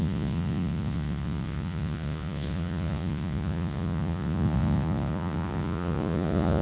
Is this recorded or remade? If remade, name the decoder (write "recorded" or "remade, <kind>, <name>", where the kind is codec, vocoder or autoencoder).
remade, vocoder, Vocos